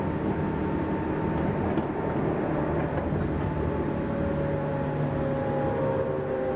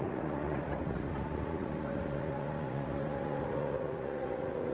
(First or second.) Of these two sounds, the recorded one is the first